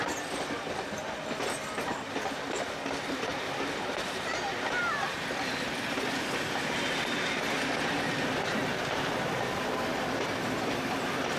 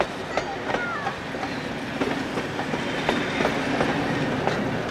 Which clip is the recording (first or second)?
second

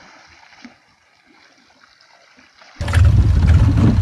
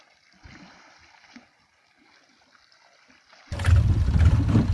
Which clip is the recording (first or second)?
first